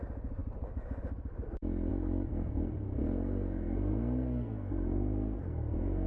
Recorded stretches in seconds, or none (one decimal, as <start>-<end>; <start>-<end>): 0.0-2.3